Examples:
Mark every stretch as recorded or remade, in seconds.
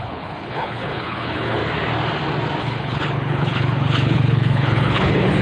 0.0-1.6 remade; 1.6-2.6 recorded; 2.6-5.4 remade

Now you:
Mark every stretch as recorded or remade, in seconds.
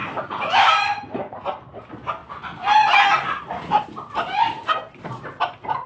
0.0-5.9 recorded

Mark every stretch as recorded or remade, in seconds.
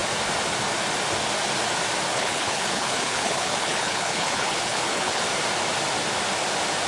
0.0-2.1 recorded; 2.1-5.2 remade; 5.2-6.9 recorded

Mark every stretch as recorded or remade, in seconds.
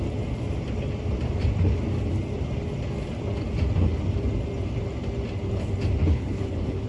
0.0-6.0 recorded; 6.0-6.9 remade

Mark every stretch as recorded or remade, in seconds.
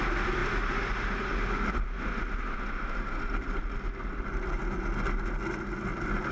0.0-6.3 recorded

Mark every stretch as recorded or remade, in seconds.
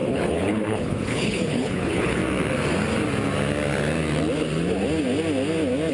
0.0-2.2 remade; 2.2-5.9 recorded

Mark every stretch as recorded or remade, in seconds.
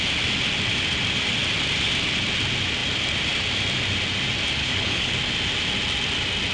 0.0-4.6 recorded; 4.6-5.1 remade; 5.1-6.5 recorded